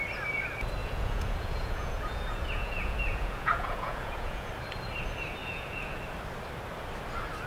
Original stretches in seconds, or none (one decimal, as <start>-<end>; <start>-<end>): 0.0-0.8; 4.5-5.4; 6.0-7.5